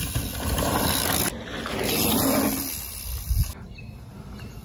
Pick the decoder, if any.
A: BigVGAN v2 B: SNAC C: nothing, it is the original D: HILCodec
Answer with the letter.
C